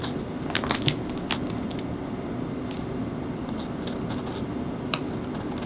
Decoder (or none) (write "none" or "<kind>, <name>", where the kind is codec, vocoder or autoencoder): none